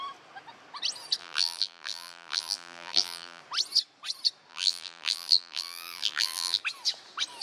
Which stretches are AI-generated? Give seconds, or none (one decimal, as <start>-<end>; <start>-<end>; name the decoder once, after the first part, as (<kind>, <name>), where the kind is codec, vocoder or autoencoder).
1.2-3.4 (vocoder, BigVGAN v2); 4.5-6.6